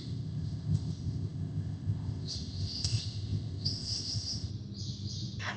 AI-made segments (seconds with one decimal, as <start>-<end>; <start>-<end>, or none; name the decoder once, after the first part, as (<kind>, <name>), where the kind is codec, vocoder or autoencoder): 0.0-4.5 (codec, ZipCodec)